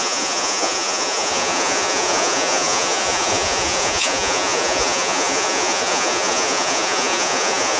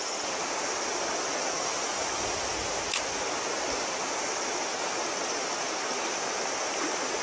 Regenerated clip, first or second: first